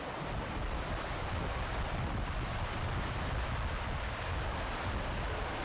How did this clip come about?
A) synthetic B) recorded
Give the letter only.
B